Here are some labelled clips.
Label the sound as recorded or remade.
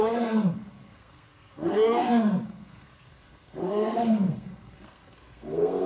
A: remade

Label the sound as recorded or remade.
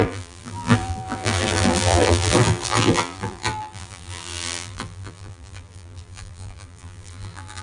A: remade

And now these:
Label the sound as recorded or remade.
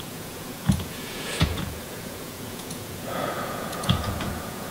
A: remade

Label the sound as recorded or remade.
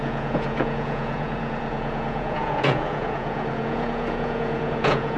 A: remade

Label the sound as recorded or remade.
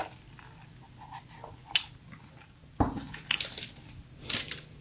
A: recorded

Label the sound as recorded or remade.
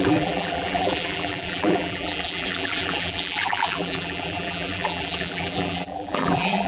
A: remade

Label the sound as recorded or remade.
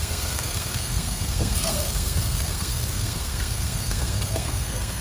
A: remade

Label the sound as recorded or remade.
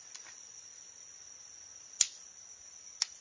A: recorded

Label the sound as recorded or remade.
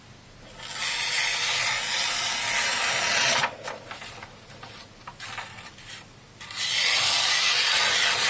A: recorded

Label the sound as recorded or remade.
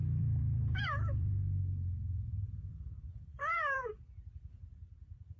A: remade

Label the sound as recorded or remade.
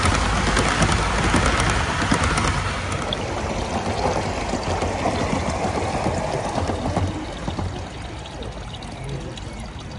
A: recorded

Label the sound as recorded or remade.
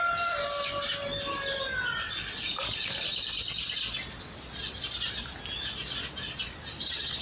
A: recorded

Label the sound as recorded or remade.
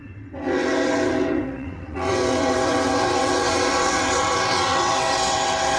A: remade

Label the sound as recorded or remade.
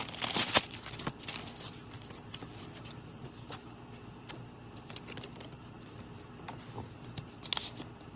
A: remade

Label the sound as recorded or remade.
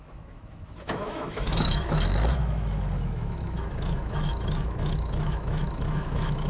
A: remade